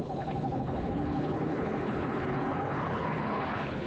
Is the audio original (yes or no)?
no